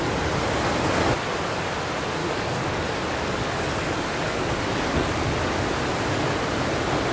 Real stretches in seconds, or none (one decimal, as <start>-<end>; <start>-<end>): 0.0-2.2; 5.2-7.1